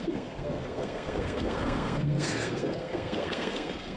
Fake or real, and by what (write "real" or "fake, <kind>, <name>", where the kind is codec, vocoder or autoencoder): fake, codec, SNAC